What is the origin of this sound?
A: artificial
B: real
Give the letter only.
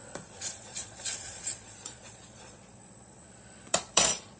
A